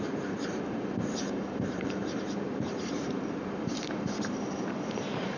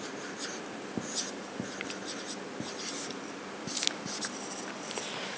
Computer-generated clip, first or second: first